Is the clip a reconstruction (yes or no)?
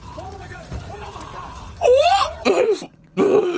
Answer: yes